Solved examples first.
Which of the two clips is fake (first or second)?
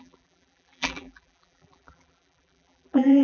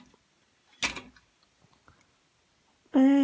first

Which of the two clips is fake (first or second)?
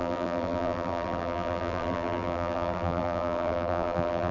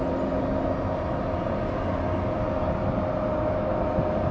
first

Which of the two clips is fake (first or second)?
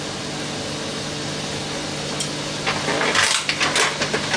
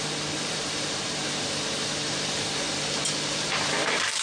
second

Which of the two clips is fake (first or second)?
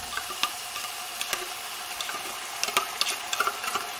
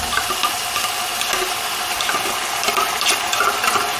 first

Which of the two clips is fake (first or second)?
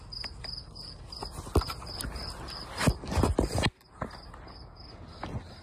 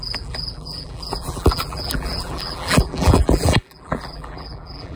second